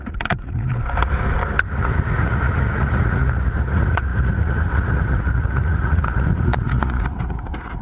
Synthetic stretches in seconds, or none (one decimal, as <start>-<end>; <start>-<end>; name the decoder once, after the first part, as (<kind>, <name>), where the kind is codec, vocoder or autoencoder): 0.0-0.7 (vocoder, Vocos); 1.7-7.8